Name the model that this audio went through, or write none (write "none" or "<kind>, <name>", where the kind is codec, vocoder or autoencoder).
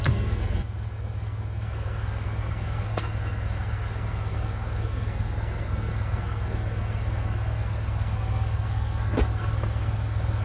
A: codec, SNAC